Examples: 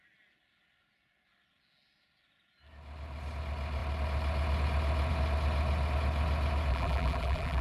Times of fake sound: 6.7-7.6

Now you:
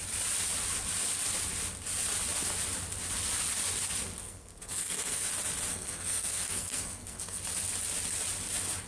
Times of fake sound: 4.2-5.3; 5.7-7.4

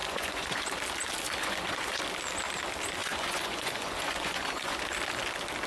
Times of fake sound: 0.0-0.7; 1.4-2.0; 3.0-4.8

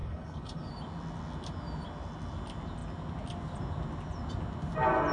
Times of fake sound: 0.0-0.7